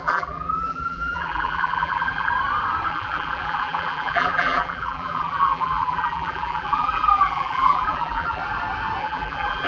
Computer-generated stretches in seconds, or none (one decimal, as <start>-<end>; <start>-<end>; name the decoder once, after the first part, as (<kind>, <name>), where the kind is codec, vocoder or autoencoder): 0.0-2.3 (vocoder, BigVGAN v2); 2.9-8.4; 9.0-9.7